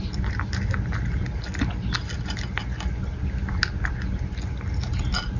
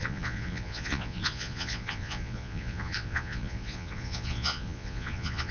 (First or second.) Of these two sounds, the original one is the first